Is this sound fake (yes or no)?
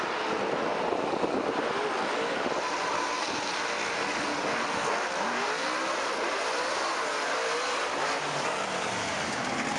no